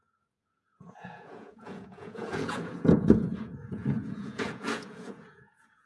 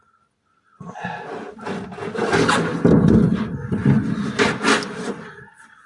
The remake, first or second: first